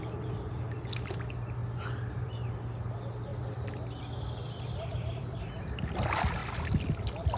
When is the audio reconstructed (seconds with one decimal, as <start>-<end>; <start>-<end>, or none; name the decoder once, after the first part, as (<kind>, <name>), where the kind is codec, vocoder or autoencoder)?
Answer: 1.6-2.3 (vocoder, BigVGAN v2); 4.9-5.5; 6.4-7.4